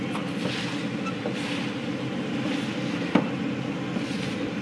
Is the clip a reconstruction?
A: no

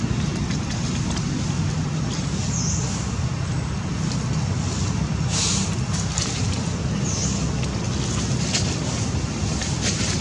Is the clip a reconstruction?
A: no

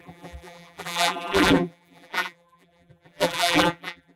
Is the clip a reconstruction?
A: yes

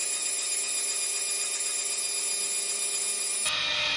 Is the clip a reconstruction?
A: no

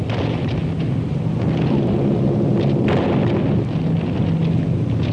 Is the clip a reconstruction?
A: no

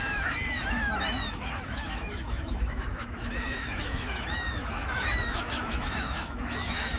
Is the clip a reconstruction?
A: yes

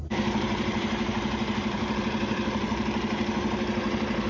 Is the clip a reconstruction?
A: yes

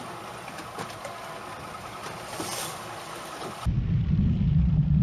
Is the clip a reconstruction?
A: no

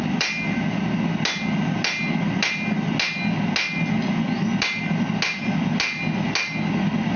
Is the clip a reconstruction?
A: no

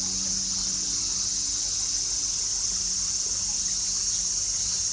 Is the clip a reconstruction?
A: no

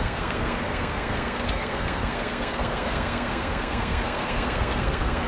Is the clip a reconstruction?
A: yes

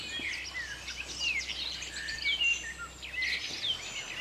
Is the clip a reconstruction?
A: no